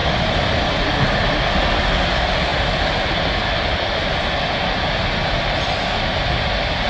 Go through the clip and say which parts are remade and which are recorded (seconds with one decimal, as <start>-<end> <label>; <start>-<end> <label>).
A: 0.0-6.9 recorded